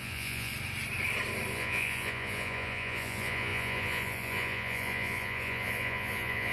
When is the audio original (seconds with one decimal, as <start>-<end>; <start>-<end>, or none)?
0.5-1.5